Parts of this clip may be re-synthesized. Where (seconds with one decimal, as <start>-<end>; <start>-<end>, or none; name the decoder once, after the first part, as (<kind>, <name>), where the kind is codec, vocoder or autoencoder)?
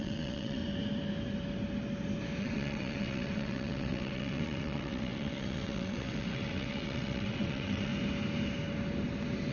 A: 0.0-0.6 (vocoder, WaveNeXt); 2.4-7.9